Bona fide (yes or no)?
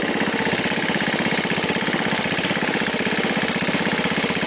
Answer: yes